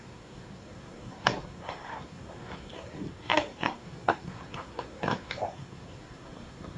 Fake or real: fake